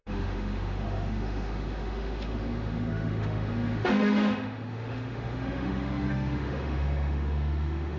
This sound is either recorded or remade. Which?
remade